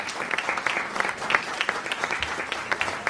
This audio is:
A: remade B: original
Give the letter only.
A